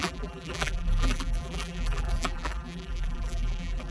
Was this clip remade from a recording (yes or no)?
yes